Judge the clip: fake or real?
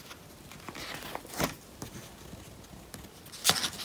real